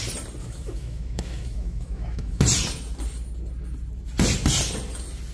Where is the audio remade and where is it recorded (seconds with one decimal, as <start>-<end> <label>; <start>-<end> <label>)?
0.0-0.4 recorded; 0.4-2.4 remade; 2.4-5.3 recorded